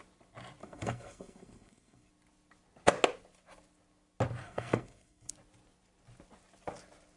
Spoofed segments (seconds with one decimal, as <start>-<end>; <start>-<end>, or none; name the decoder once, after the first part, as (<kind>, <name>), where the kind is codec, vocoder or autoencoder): 0.6-2.1 (codec, SNAC); 4.4-5.3